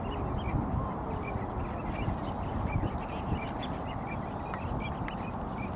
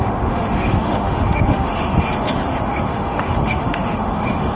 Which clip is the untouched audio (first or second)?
first